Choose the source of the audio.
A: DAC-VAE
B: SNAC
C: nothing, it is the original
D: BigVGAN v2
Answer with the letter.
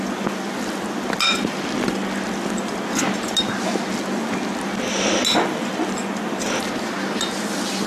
C